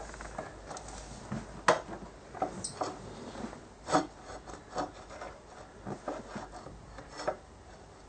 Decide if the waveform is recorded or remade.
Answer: recorded